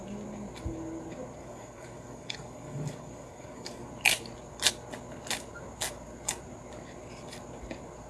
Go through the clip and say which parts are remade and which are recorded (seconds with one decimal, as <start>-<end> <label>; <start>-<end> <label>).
0.0-1.4 recorded; 1.4-3.9 remade; 3.9-8.1 recorded